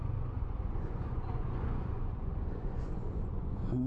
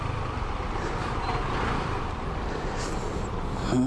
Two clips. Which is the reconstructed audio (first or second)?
first